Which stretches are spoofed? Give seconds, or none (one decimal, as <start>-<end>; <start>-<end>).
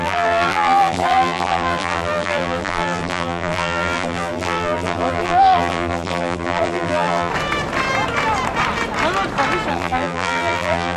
0.0-7.3; 9.7-11.0